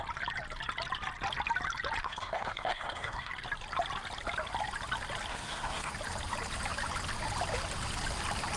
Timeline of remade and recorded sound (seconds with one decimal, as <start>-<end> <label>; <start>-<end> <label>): 0.0-2.0 recorded; 2.0-3.3 remade; 3.3-5.3 recorded; 5.3-5.9 remade; 5.9-8.6 recorded